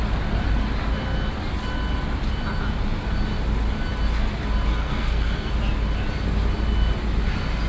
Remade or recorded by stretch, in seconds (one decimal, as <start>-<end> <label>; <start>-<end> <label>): 0.0-4.8 recorded; 4.8-5.5 remade; 5.5-7.7 recorded